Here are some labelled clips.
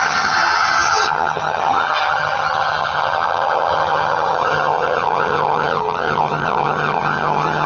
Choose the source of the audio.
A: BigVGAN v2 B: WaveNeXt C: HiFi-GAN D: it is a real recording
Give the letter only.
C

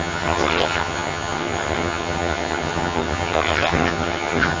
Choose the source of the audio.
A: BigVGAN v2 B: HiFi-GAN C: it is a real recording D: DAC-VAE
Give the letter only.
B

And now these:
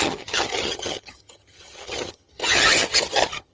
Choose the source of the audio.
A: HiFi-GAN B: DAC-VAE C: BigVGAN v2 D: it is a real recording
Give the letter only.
A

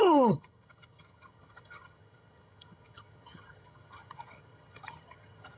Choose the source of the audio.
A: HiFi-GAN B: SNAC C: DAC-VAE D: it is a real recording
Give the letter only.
A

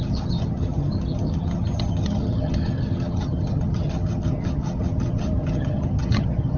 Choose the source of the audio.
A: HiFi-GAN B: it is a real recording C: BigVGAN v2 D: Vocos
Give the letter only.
A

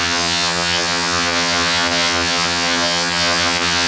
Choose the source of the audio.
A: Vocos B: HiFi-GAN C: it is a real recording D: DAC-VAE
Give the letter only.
B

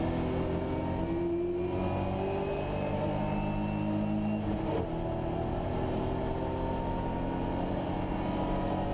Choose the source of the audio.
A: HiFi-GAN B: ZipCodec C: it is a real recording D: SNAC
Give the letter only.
C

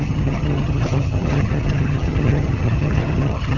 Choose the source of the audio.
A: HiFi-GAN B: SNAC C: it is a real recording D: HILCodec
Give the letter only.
A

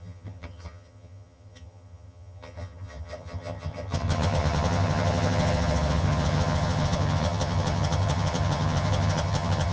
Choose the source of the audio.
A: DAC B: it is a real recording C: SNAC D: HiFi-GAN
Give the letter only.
D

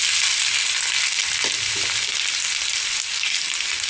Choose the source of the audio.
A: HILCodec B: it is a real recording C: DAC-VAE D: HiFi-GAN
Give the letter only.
B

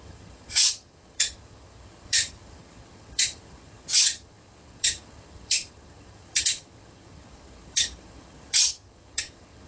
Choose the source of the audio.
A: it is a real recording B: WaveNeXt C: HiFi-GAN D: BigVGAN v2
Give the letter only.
C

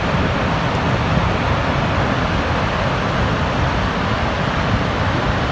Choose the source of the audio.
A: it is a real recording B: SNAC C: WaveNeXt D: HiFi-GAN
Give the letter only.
A